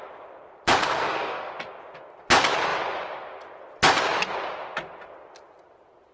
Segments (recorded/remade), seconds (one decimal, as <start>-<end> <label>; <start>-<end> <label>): 0.0-0.8 recorded; 0.8-1.5 remade; 1.5-6.1 recorded